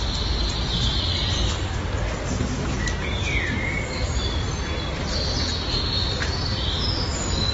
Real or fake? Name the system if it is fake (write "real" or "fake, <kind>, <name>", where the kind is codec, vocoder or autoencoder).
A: real